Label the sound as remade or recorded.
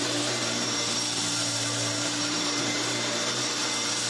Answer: remade